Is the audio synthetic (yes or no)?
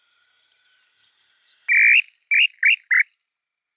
no